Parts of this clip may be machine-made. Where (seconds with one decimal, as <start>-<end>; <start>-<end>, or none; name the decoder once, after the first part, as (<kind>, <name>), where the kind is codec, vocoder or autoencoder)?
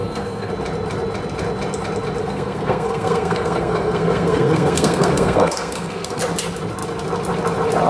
0.0-0.5 (codec, SNAC); 2.2-6.2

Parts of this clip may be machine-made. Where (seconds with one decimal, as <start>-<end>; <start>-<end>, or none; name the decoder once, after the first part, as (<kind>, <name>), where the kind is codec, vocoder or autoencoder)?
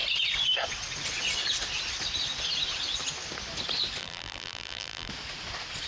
4.0-5.1 (vocoder, BigVGAN v2)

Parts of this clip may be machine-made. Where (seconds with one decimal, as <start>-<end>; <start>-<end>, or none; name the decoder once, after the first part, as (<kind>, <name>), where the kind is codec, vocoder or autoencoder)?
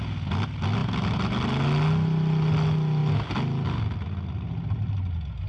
none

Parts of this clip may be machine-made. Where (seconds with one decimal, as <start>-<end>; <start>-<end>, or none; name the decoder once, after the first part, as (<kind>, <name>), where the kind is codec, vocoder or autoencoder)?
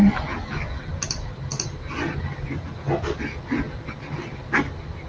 none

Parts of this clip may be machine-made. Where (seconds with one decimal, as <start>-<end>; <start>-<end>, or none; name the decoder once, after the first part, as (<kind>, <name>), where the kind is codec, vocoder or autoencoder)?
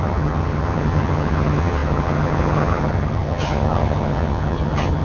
0.0-5.0 (vocoder, HiFi-GAN)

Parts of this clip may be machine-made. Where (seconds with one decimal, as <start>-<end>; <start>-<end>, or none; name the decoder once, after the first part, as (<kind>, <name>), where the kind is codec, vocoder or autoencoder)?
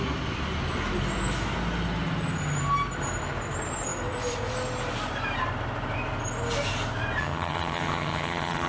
7.2-8.7 (vocoder, HiFi-GAN)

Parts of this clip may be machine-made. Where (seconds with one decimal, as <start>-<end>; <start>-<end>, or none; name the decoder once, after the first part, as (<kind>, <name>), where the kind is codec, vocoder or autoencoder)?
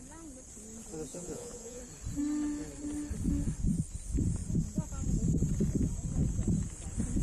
1.1-1.8 (vocoder, Vocos)